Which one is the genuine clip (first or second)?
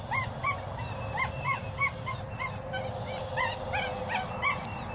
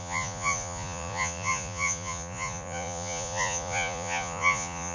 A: first